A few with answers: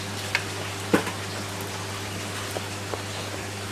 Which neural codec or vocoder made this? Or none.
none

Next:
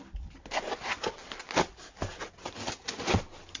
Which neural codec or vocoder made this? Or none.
none